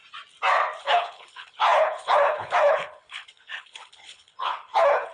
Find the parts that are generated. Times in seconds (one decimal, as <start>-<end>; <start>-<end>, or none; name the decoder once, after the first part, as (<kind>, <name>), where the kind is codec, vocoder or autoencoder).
0.8-5.1 (codec, HILCodec)